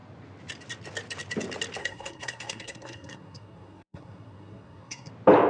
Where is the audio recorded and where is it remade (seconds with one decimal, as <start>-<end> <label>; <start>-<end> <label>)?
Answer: 0.0-1.8 recorded; 1.8-5.1 remade; 5.1-5.5 recorded